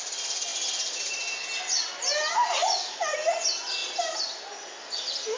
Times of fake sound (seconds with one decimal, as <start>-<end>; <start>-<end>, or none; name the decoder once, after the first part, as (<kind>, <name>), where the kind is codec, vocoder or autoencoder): none